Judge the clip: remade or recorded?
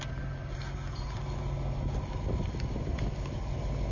recorded